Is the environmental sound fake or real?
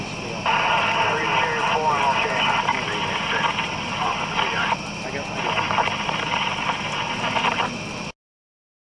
real